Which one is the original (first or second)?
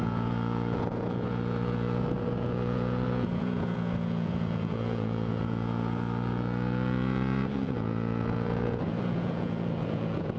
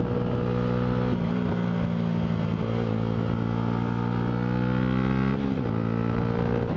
second